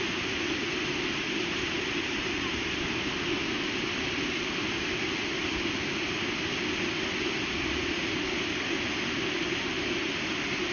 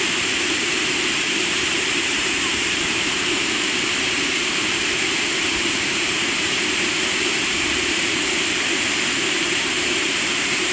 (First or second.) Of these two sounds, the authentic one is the first